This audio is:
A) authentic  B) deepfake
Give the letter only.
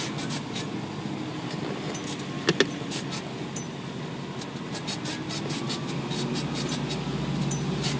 A